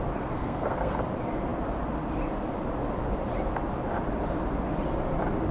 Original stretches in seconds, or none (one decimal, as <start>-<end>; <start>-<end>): 0.0-0.4; 1.0-5.5